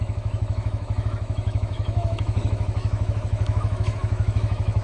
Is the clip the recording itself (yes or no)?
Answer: no